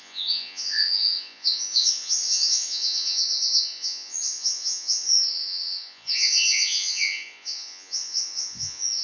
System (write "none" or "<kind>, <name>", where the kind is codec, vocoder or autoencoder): vocoder, Vocos